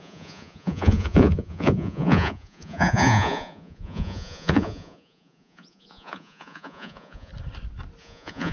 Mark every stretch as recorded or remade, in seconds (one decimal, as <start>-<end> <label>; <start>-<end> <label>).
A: 0.0-7.3 remade; 7.3-8.0 recorded; 8.0-8.5 remade